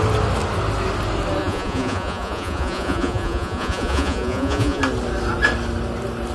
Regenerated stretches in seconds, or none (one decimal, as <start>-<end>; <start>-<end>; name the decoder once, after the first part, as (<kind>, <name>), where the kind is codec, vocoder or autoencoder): 1.4-4.8 (vocoder, Vocos)